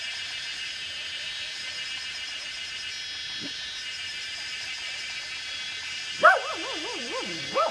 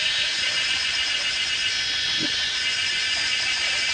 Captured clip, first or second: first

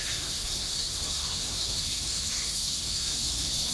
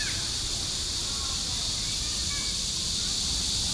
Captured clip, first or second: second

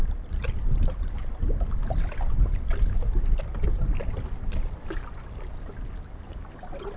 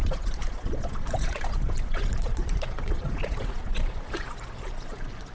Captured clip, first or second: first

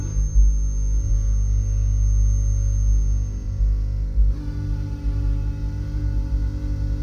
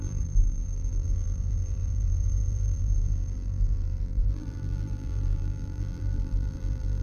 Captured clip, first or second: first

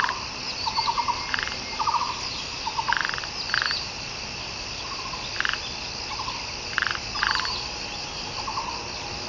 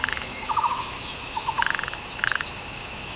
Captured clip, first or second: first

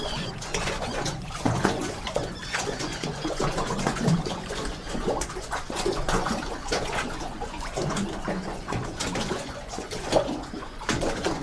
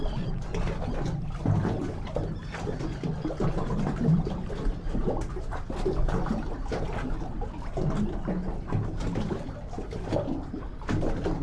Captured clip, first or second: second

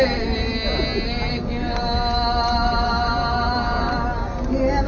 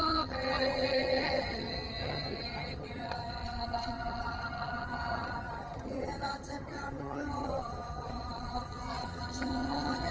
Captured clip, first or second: first